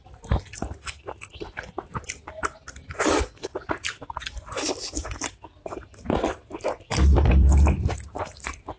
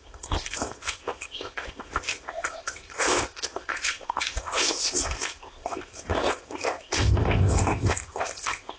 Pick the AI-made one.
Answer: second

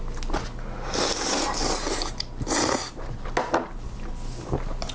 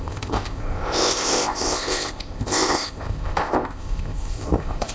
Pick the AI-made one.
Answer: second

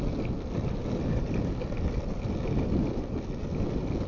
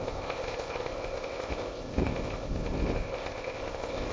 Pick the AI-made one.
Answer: second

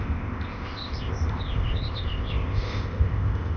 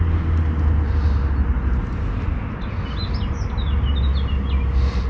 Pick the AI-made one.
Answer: first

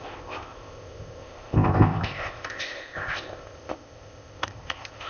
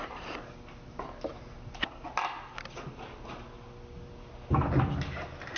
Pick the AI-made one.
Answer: first